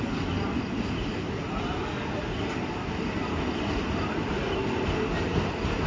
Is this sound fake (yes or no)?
no